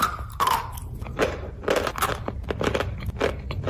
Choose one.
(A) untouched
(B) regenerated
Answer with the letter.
A